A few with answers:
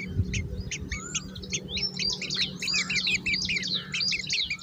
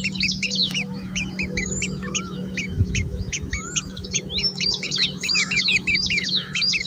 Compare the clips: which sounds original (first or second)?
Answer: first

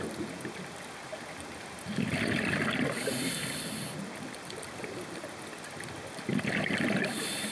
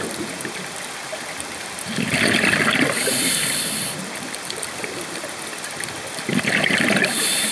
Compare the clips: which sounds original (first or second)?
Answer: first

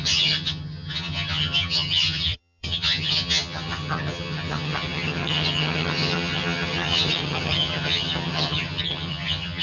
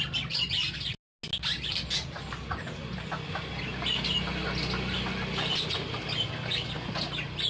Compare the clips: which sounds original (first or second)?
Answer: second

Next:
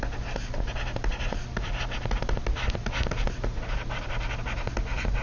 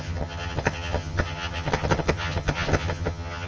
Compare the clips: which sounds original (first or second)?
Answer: first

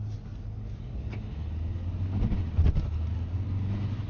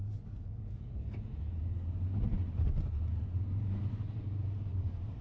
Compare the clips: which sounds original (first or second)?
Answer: first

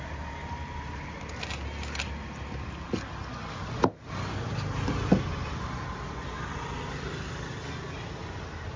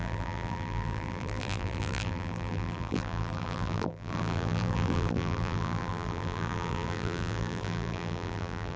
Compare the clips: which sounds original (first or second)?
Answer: first